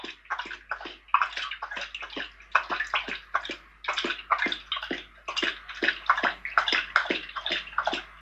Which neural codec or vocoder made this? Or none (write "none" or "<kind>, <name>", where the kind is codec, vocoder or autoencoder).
none